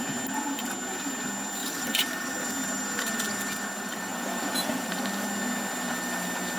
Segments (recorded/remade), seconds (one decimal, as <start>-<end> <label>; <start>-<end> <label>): 0.0-1.6 recorded; 1.6-2.3 remade; 2.3-4.1 recorded; 4.1-5.0 remade; 5.0-6.6 recorded